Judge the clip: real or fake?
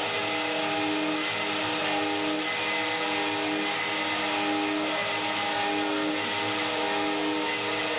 real